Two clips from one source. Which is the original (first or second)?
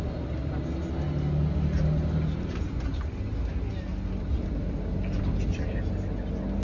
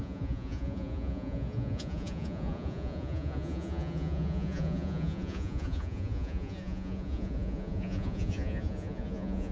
first